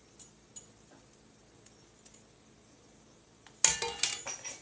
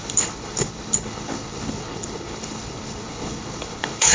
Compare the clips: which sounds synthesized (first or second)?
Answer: second